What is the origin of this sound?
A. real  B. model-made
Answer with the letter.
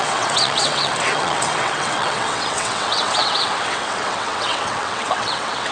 B